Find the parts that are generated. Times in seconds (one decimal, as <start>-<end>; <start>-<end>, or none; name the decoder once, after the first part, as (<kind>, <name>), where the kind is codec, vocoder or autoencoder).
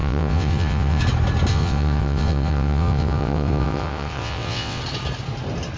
0.0-1.0 (vocoder, WaveNeXt); 1.5-4.8